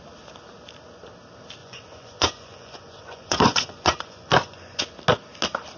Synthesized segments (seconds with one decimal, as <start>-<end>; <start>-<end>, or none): 1.6-4.8